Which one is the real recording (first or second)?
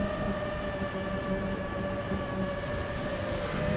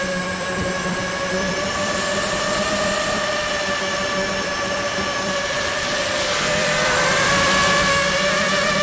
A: first